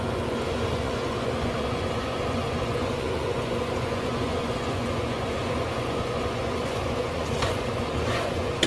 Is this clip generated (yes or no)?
yes